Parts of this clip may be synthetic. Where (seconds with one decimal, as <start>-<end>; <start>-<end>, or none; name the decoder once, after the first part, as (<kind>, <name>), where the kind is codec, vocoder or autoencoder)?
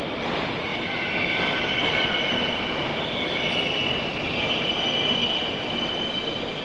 none